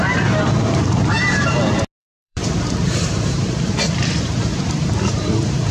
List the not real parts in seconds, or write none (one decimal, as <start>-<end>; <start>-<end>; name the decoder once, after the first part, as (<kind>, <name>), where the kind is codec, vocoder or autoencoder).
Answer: 2.0-5.7 (vocoder, BigVGAN v2)